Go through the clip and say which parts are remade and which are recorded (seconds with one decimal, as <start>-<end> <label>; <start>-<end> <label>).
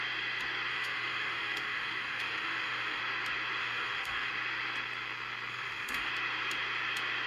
0.0-0.7 recorded; 0.7-3.0 remade; 3.0-3.6 recorded; 3.6-4.3 remade; 4.3-5.5 recorded; 5.5-6.1 remade; 6.1-7.3 recorded